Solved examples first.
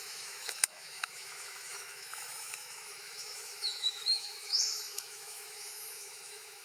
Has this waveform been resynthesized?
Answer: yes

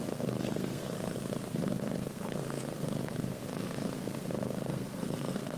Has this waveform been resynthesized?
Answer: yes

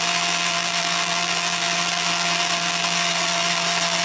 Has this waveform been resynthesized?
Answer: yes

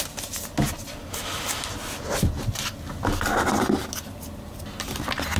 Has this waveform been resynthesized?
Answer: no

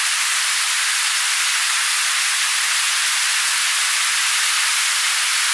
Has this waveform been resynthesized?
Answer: no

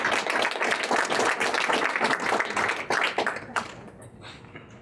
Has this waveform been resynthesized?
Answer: no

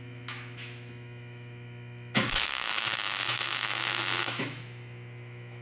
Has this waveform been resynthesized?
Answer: yes